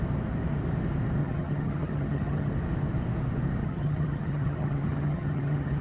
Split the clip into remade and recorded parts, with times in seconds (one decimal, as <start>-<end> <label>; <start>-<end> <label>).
0.0-1.2 recorded; 1.2-2.5 remade; 2.5-3.6 recorded; 3.6-5.8 remade